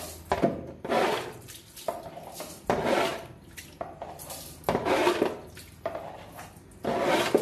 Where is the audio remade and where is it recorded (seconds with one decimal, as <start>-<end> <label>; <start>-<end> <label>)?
0.0-7.4 recorded